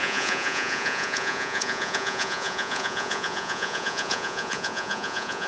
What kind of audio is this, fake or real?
fake